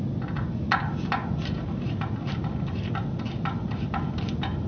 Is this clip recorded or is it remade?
recorded